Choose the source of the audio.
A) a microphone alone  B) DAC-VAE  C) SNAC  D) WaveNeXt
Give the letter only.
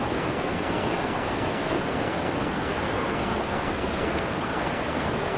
C